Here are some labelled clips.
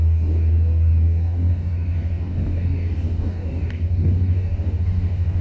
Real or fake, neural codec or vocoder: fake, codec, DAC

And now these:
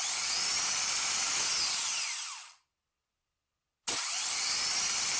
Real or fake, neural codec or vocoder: real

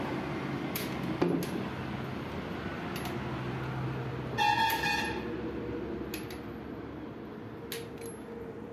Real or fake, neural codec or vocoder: real